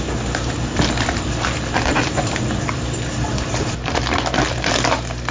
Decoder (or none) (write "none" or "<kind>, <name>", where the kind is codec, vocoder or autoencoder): vocoder, BigVGAN v2